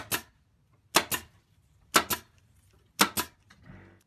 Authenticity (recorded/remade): recorded